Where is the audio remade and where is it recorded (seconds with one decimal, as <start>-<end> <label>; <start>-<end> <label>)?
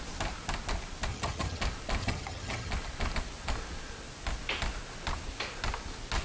0.0-1.1 recorded; 1.1-1.6 remade; 1.6-2.0 recorded; 2.0-2.7 remade; 2.7-6.2 recorded